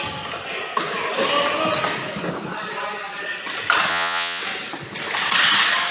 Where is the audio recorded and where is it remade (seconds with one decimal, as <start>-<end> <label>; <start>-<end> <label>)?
0.0-3.9 recorded; 3.9-4.4 remade; 4.4-5.9 recorded